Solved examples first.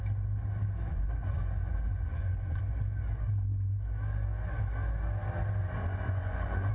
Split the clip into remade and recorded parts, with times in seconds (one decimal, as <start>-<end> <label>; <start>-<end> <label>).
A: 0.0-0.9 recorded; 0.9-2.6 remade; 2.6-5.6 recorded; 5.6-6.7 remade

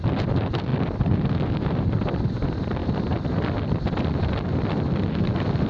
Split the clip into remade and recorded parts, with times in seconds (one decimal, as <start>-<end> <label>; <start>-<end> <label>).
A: 0.0-5.7 remade

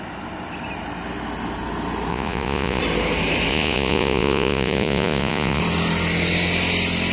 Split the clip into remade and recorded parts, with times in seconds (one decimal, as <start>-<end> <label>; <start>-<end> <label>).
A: 0.0-2.1 recorded; 2.1-2.8 remade; 2.8-3.5 recorded; 3.5-5.6 remade; 5.6-7.1 recorded

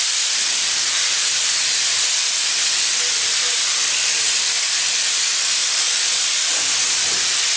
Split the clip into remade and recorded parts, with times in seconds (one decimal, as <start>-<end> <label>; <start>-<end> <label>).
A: 0.0-7.6 remade